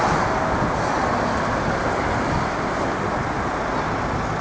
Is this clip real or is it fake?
real